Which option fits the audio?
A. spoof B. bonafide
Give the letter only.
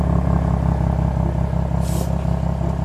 B